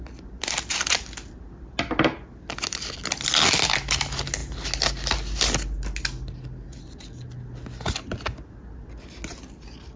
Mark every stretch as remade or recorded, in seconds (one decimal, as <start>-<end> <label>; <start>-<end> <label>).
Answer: 0.0-10.0 recorded